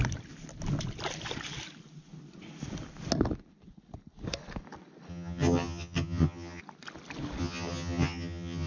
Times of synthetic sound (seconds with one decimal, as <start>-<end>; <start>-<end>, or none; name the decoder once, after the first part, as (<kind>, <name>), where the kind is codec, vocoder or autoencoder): 5.1-6.6 (vocoder, HiFi-GAN); 7.4-8.7